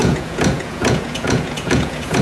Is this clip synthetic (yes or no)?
yes